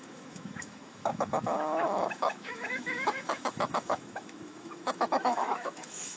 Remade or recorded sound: remade